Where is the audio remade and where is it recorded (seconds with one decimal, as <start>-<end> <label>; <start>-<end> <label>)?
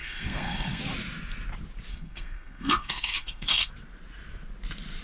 0.0-0.8 remade; 0.8-1.9 recorded; 1.9-3.7 remade; 3.7-5.0 recorded